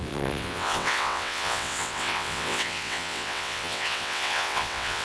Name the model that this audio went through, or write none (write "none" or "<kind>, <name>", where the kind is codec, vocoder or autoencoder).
vocoder, WaveNeXt